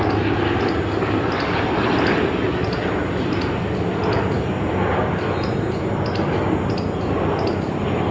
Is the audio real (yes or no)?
yes